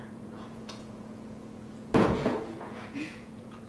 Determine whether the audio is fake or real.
fake